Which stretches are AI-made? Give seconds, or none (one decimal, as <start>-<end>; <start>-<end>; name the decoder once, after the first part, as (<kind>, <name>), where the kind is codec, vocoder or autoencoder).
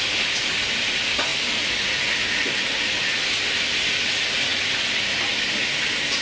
none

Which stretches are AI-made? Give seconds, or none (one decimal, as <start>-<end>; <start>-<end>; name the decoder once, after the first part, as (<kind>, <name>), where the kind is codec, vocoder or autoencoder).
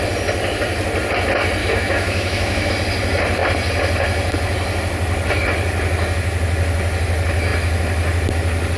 1.6-2.7 (autoencoder, DAC-VAE)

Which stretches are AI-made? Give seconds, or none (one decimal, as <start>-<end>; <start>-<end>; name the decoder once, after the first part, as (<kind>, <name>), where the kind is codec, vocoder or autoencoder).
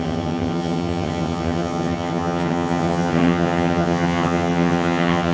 0.0-5.3 (vocoder, HiFi-GAN)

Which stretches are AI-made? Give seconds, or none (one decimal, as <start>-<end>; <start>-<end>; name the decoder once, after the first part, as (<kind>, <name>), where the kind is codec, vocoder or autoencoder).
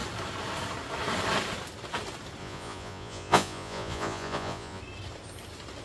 2.4-4.8 (vocoder, Vocos)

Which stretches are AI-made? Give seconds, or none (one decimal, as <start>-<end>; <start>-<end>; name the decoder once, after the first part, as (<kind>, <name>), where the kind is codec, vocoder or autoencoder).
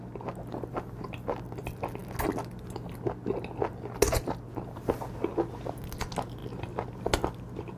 none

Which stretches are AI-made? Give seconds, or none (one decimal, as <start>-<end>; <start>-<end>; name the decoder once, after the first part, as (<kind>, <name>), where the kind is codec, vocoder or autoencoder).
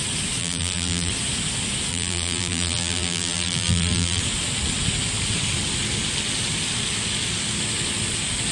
0.4-1.1 (vocoder, BigVGAN v2); 1.9-4.2